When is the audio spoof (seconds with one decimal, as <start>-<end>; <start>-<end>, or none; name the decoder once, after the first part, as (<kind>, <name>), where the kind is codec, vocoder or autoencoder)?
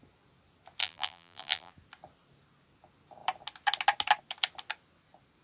0.8-1.7 (vocoder, BigVGAN v2)